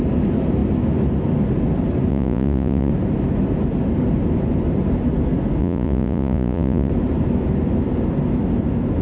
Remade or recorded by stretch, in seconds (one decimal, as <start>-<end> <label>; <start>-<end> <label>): 0.0-2.1 recorded; 2.1-2.9 remade; 2.9-5.6 recorded; 5.6-6.9 remade; 6.9-9.0 recorded